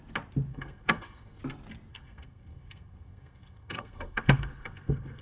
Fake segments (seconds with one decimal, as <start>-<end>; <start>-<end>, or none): 0.5-1.4; 1.9-5.2